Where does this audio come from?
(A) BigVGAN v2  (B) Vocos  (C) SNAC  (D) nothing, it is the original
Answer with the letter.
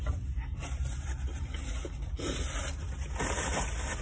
D